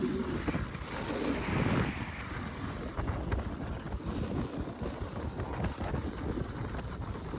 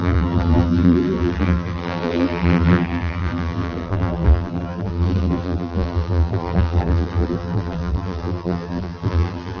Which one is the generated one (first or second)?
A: second